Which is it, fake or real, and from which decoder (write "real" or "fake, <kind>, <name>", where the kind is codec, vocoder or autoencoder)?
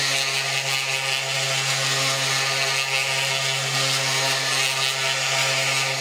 real